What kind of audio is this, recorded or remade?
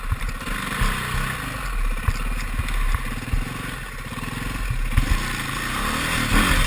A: recorded